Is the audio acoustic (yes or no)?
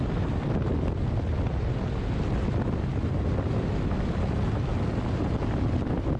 yes